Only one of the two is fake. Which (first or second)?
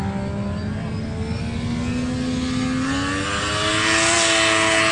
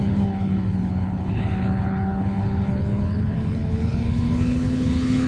second